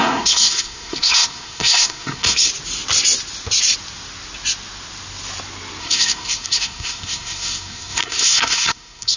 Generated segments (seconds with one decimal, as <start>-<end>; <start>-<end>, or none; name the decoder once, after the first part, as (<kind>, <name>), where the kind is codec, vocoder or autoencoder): 0.0-2.5 (codec, SNAC); 5.8-9.2